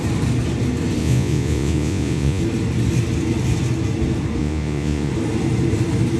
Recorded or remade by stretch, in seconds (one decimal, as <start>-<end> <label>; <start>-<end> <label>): 0.0-1.0 recorded; 1.0-2.4 remade; 2.4-4.4 recorded; 4.4-5.1 remade; 5.1-6.2 recorded